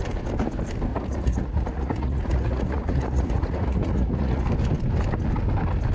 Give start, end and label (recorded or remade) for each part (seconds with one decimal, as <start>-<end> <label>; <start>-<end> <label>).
0.0-0.9 recorded; 0.9-4.4 remade; 4.4-5.9 recorded